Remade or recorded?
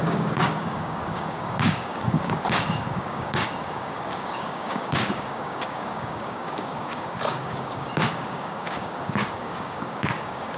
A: remade